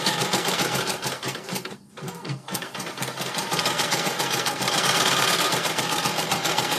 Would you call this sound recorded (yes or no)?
no